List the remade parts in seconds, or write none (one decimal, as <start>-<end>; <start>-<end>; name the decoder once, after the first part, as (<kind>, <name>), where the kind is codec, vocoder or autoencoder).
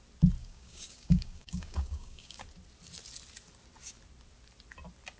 0.4-2.4 (codec, DAC)